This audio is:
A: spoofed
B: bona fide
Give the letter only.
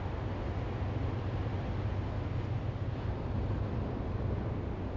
B